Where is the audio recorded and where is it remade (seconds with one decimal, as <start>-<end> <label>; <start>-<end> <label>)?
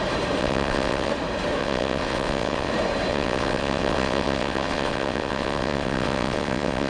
0.0-0.4 recorded; 0.4-1.1 remade; 1.1-1.6 recorded; 1.6-2.7 remade; 2.7-3.1 recorded; 3.1-6.9 remade